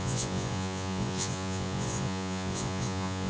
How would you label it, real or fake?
fake